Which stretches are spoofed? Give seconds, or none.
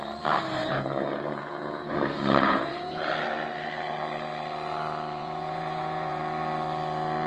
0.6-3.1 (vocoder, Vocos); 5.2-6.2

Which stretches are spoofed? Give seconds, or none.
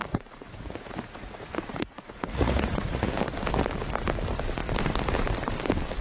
0.0-3.1 (vocoder, Vocos)